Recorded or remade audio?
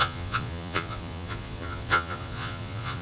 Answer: remade